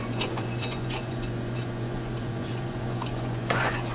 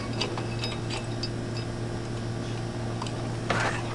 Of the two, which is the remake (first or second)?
first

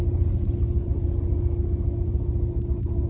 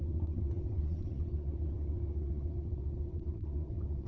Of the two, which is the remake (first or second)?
second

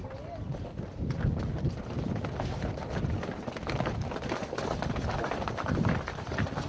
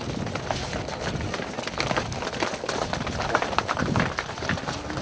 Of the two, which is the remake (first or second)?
first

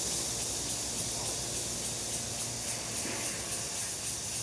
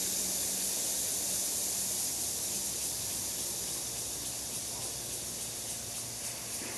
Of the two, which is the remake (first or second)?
second